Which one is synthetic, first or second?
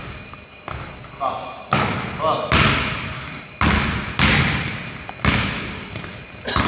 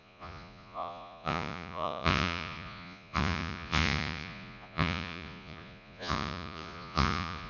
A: second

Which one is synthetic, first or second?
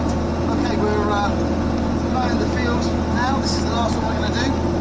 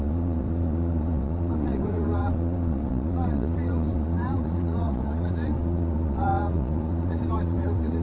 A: second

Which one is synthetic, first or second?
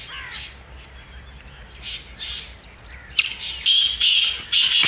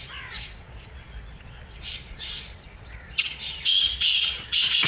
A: second